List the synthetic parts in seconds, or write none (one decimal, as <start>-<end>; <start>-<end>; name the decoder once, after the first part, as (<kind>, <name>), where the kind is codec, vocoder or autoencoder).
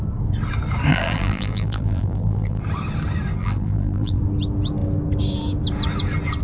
0.9-2.6 (vocoder, BigVGAN v2); 3.4-4.2